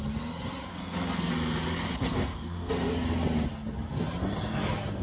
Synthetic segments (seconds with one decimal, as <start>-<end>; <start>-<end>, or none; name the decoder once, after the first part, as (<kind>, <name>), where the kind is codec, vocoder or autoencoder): 0.7-1.3 (codec, SNAC); 1.9-2.7